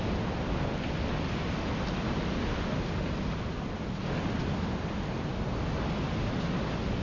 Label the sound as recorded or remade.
recorded